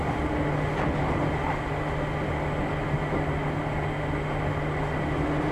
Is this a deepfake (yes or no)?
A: no